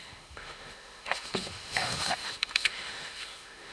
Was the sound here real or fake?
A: fake